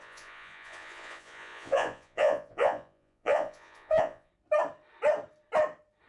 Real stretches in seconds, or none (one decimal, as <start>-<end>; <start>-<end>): 4.3-6.1